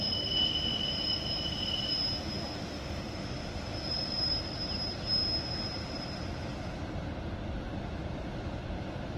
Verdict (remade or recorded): recorded